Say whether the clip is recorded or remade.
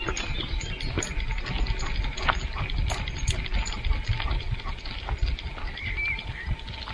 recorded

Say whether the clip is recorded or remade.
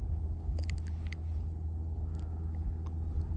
recorded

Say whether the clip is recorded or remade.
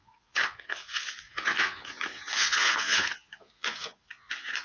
remade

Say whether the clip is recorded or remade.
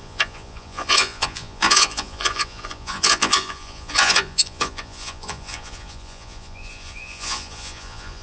remade